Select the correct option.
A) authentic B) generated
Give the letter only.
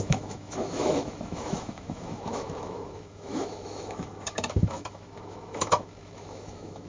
B